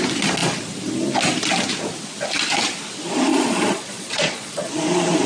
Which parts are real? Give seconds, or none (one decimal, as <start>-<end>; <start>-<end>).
0.0-3.3; 4.7-5.3